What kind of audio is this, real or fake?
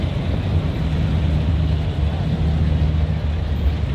real